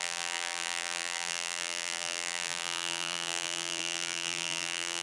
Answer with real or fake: fake